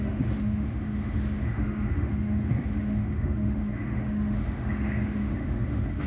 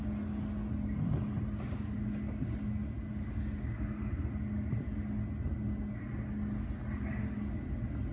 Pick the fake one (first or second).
first